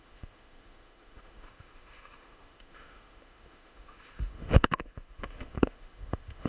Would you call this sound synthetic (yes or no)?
yes